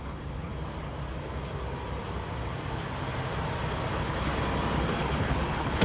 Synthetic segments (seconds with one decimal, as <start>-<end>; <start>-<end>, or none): 0.0-0.5; 3.9-4.3; 4.9-5.8